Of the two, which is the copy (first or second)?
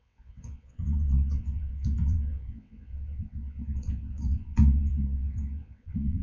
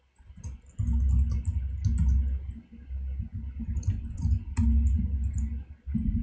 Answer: first